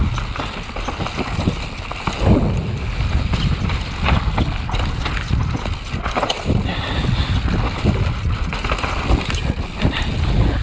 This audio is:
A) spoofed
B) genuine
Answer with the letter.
B